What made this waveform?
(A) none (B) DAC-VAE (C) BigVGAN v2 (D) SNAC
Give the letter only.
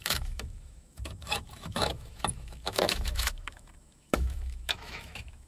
B